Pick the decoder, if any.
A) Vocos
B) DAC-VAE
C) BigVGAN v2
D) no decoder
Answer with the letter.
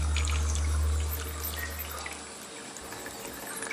D